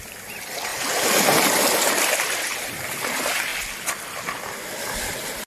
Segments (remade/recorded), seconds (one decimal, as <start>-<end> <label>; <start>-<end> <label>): 0.0-5.5 recorded